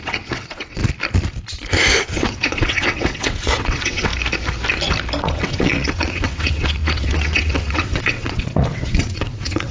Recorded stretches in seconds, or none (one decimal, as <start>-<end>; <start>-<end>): 0.8-2.0; 4.1-5.2